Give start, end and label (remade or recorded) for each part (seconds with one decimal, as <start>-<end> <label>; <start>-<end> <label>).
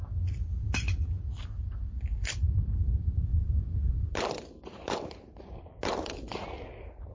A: 0.0-3.3 recorded; 3.3-3.9 remade; 3.9-7.1 recorded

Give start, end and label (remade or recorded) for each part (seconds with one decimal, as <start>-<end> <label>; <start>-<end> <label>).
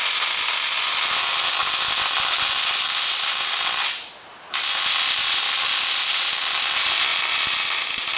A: 0.0-8.2 recorded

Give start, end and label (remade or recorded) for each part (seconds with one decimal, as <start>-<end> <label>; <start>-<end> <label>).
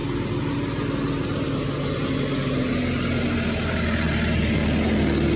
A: 0.0-5.4 recorded